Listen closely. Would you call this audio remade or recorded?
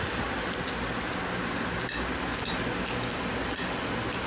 recorded